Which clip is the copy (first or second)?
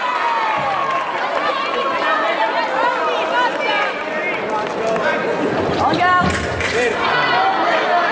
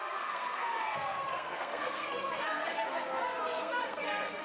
second